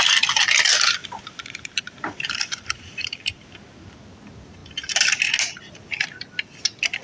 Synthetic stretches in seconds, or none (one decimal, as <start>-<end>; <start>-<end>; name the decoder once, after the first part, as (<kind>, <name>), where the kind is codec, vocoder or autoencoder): 1.0-3.5 (vocoder, BigVGAN v2)